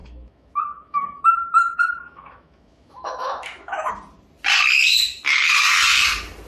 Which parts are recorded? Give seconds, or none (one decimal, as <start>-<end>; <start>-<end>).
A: 3.9-6.5

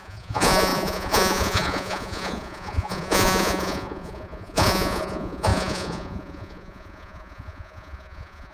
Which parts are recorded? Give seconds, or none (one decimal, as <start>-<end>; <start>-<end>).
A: none

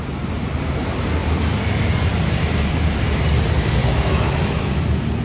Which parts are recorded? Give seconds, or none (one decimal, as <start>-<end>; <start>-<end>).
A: 0.0-3.8; 4.8-5.2

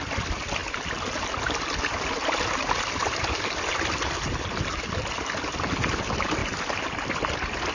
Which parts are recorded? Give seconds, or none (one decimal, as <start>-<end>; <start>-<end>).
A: 0.0-7.7